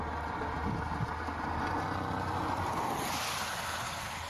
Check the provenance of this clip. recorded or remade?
recorded